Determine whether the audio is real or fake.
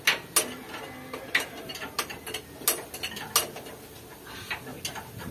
real